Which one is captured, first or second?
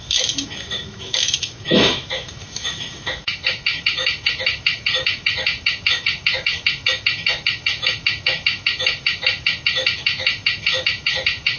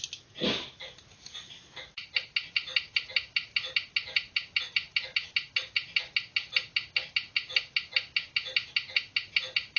second